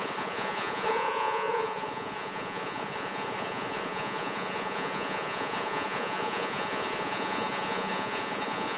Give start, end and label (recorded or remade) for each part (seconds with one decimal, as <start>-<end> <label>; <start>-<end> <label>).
0.0-8.8 remade